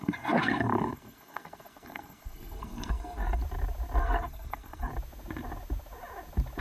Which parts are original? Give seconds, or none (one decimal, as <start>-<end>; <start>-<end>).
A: 3.4-4.0; 4.9-6.6